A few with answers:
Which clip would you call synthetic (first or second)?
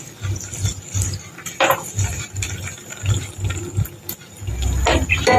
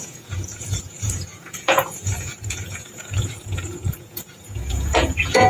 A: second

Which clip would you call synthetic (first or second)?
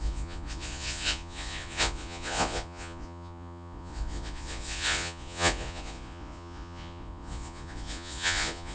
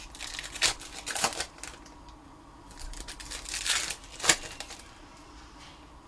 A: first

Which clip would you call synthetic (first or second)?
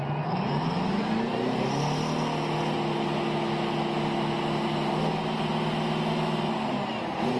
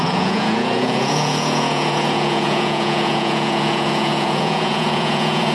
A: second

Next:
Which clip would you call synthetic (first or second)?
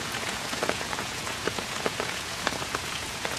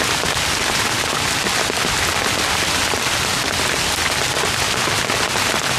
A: first